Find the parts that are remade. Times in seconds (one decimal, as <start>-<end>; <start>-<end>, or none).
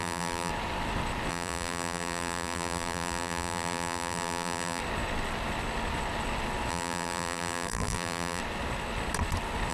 0.0-0.5; 1.3-4.8; 6.7-8.4